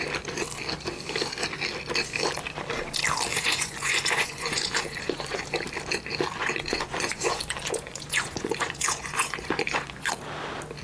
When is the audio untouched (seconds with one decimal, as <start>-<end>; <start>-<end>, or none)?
0.0-3.3; 5.4-6.4; 10.1-10.8

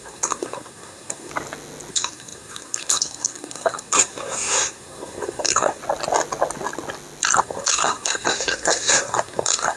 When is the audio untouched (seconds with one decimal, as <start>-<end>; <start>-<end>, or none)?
1.3-1.9; 5.8-7.4